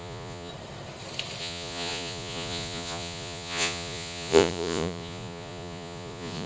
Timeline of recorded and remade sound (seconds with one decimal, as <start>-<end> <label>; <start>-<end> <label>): 0.0-0.5 remade; 0.5-1.4 recorded; 1.4-6.5 remade